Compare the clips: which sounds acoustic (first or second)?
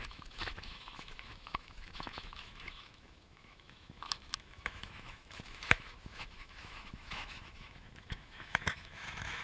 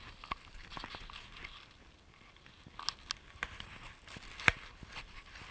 second